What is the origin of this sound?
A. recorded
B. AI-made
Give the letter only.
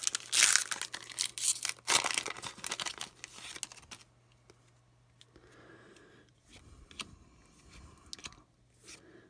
A